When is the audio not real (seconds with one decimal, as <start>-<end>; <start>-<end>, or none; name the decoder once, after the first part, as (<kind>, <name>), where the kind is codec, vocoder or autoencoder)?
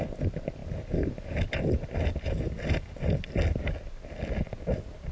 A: none